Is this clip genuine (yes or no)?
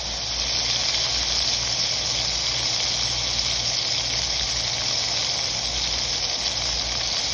yes